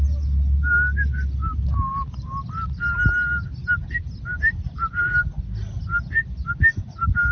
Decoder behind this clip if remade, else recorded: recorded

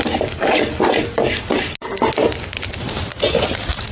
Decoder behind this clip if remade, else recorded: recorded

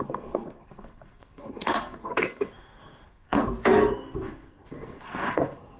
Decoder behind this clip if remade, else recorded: remade, codec, SNAC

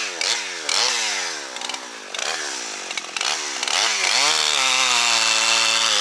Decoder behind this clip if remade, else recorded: recorded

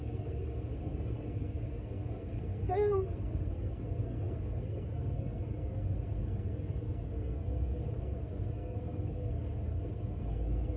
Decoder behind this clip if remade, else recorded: remade, codec, SNAC